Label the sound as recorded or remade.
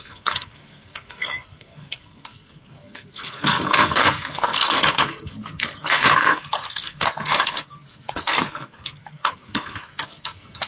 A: remade